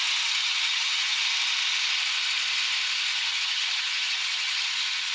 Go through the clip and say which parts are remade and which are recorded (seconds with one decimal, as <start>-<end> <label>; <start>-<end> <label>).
0.0-0.4 recorded; 0.4-1.2 remade; 1.2-3.1 recorded; 3.1-5.1 remade